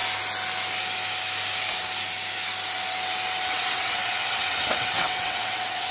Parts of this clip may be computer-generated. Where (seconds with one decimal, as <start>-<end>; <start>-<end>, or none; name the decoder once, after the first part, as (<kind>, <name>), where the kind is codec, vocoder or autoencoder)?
3.5-5.9 (vocoder, WaveNeXt)